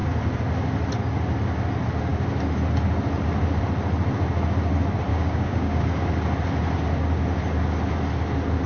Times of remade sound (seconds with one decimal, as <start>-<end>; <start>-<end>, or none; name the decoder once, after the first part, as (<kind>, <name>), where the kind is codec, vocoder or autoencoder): 5.1-5.9 (codec, DAC)